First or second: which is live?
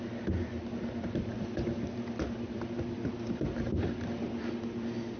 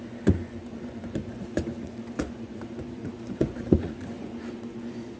first